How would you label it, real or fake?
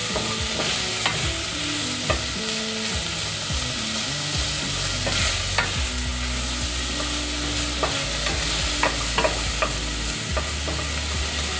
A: real